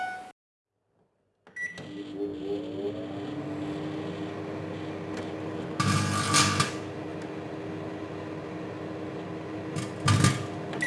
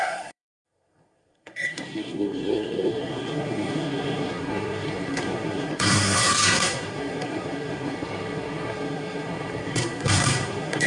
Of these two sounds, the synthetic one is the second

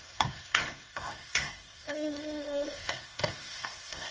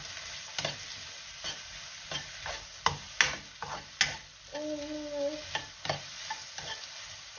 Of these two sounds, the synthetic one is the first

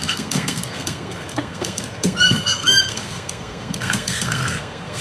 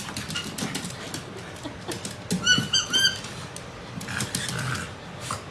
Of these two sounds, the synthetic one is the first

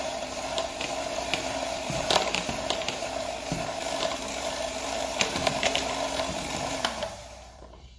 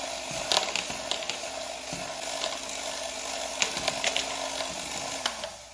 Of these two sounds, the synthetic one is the first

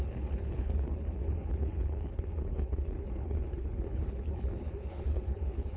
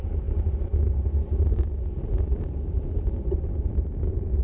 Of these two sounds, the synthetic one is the first